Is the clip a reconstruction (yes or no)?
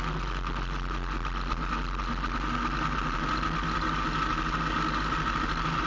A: no